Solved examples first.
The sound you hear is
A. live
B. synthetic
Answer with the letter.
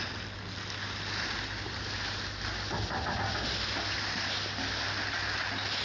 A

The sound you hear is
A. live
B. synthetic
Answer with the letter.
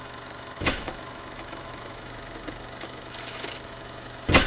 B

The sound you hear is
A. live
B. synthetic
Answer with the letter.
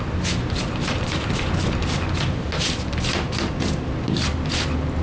A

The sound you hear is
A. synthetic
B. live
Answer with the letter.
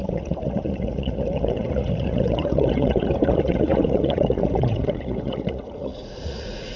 A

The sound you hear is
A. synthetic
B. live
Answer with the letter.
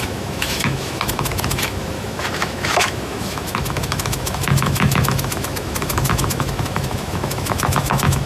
A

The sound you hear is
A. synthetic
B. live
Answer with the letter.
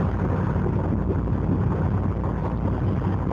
B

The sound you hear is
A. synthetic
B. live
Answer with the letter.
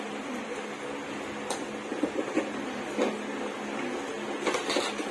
B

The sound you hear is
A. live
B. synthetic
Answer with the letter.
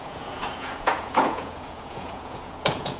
B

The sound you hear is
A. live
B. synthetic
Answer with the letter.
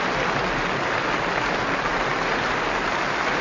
A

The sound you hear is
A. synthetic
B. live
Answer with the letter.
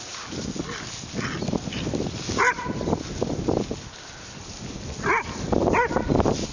B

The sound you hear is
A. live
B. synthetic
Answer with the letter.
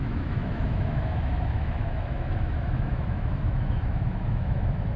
B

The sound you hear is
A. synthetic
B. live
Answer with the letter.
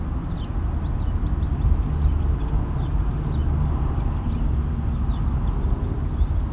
B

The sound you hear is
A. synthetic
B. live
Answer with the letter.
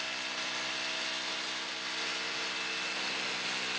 B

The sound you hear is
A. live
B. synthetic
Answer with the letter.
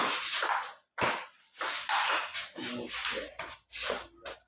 A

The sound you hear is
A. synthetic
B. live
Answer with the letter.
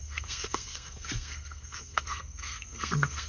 A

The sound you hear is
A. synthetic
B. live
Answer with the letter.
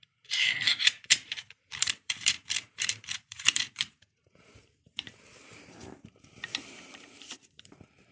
A